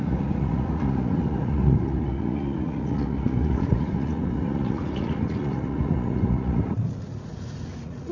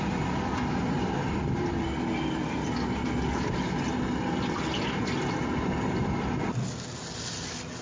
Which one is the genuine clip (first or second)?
second